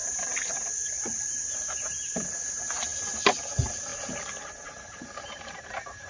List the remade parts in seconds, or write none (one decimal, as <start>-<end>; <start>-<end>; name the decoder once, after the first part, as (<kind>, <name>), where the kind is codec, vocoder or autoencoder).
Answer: 2.5-2.9 (vocoder, BigVGAN v2); 3.5-3.9; 4.5-6.1